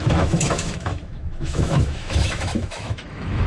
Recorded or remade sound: remade